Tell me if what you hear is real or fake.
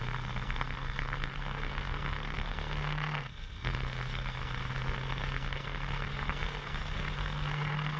fake